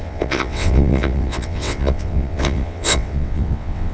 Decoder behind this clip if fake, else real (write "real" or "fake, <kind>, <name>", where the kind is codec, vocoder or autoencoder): fake, vocoder, WaveNeXt